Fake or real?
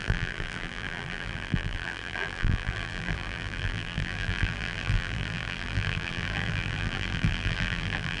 fake